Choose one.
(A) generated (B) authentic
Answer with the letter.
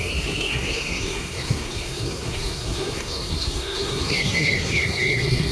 A